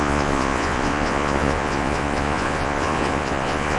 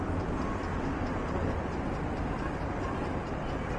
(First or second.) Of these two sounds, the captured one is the second